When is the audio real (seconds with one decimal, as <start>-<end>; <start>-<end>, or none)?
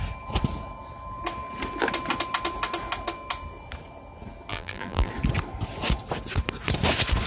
0.0-4.5; 5.1-7.3